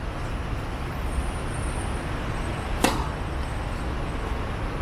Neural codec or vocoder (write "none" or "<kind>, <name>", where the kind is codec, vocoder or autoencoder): none